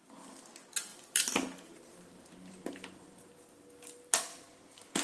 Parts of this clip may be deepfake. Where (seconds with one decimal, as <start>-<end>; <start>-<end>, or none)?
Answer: 0.9-3.2